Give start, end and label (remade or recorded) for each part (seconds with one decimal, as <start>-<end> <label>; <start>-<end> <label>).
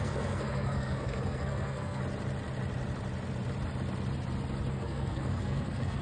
0.0-2.0 remade; 2.0-4.7 recorded; 4.7-6.0 remade